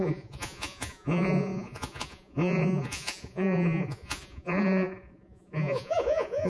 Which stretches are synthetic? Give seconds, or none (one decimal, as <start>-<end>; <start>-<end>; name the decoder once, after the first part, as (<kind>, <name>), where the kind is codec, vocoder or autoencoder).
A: 0.0-6.5 (vocoder, Vocos)